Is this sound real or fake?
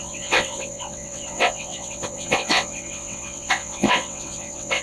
fake